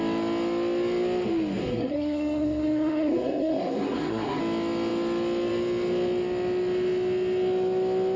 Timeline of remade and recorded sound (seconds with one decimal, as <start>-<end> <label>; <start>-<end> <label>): 0.0-1.6 recorded; 1.6-4.4 remade; 4.4-8.2 recorded